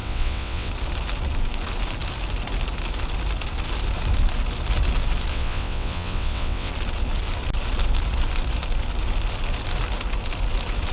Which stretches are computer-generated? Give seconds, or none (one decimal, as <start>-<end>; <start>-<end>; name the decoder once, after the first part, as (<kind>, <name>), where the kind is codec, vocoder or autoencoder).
0.0-0.7 (vocoder, WaveNeXt); 5.3-6.7